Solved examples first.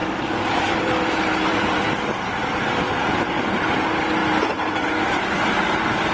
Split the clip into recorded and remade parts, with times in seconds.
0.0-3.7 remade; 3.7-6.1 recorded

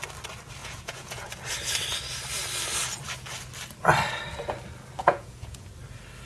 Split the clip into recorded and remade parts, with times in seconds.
0.0-0.6 recorded; 0.6-1.3 remade; 1.3-5.0 recorded; 5.0-5.7 remade; 5.7-6.3 recorded

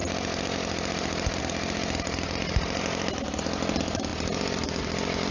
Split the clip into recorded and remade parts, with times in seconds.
0.0-5.3 recorded